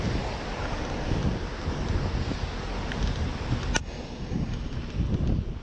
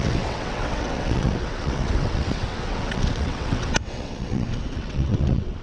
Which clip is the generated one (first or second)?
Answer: second